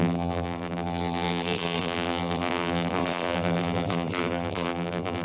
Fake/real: fake